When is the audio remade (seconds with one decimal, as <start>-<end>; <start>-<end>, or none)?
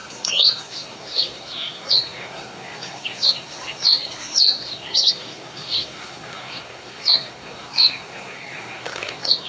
0.0-9.5